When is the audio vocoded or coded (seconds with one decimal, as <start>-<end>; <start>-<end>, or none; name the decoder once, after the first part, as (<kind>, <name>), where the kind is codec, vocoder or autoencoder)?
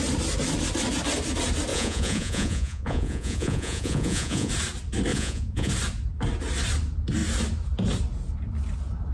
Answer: 1.7-4.5 (vocoder, Vocos); 5.1-5.7